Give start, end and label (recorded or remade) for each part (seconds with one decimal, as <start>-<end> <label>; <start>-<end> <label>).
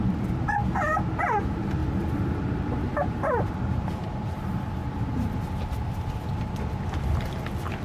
0.0-7.8 recorded